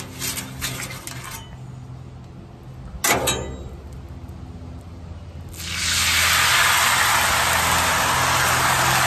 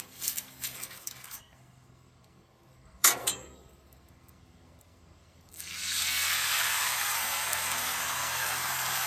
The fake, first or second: second